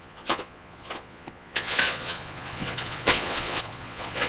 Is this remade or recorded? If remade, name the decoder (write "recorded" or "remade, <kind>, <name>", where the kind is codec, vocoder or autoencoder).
remade, vocoder, Vocos